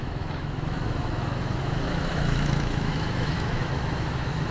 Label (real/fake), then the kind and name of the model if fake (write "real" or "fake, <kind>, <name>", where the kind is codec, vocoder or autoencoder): fake, autoencoder, DAC-VAE